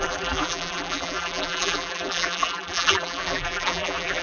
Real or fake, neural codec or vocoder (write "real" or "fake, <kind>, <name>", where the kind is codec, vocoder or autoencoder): fake, vocoder, BigVGAN v2